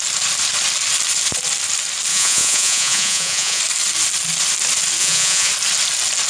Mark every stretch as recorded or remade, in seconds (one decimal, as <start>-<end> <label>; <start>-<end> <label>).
0.0-2.1 recorded; 2.1-3.6 remade; 3.6-5.0 recorded; 5.0-5.5 remade; 5.5-6.3 recorded